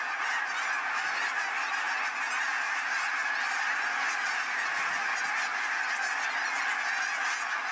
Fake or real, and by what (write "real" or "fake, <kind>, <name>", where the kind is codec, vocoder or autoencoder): real